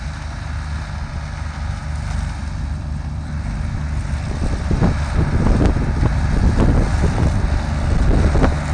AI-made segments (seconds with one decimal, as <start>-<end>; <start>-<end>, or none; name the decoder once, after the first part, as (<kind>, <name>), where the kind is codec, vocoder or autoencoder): none